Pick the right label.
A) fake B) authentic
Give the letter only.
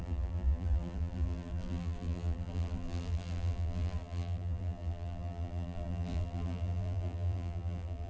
A